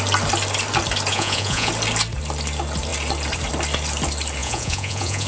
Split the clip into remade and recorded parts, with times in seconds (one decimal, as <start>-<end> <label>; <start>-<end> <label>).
0.0-1.1 recorded; 1.1-1.7 remade; 1.7-4.4 recorded; 4.4-5.3 remade